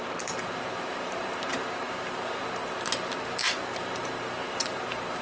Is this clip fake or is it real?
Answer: fake